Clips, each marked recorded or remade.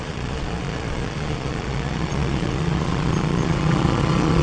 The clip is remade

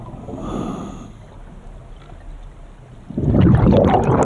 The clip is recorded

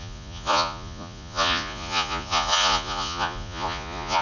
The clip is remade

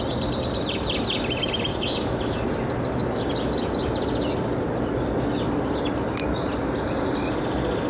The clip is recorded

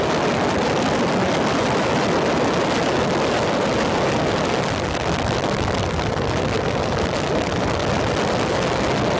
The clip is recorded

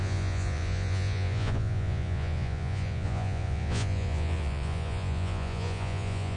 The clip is remade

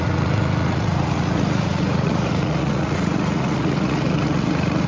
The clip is remade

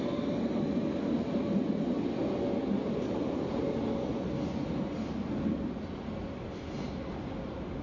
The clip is recorded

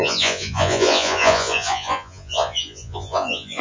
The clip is remade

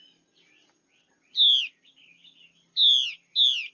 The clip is recorded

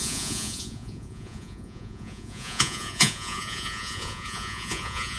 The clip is remade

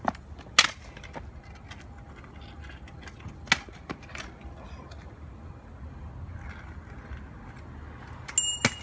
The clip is recorded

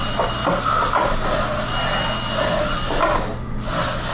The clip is recorded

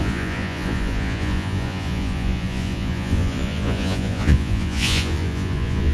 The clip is remade